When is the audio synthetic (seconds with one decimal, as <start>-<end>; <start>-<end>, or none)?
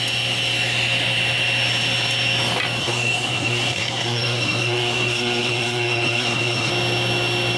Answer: 2.8-6.7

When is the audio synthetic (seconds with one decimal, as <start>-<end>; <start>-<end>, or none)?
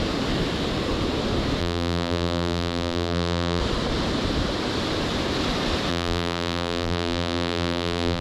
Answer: 1.6-3.6; 5.9-8.2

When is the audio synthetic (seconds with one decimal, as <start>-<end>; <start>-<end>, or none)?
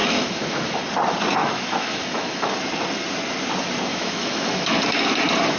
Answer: 0.0-0.8; 1.4-2.5; 3.9-4.8